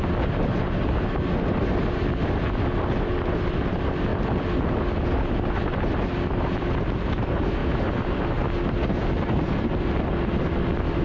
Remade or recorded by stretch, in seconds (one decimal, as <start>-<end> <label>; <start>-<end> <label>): 0.0-11.0 recorded